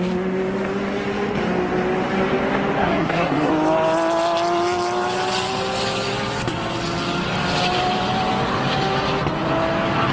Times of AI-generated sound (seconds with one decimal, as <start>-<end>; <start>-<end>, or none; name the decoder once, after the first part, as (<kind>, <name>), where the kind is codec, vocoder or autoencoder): 2.8-3.5 (codec, SNAC)